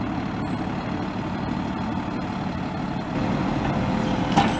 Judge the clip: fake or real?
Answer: real